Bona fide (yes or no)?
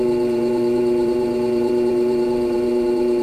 no